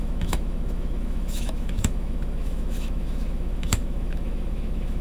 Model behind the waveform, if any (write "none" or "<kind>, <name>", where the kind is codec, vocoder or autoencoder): autoencoder, DAC-VAE